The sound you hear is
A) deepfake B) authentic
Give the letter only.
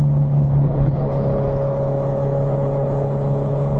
A